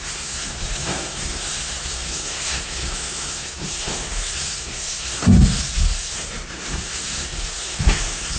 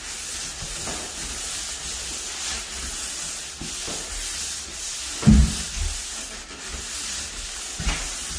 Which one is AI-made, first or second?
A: first